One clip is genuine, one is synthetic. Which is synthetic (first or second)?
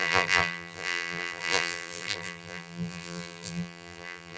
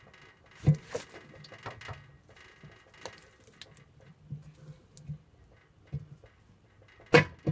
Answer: first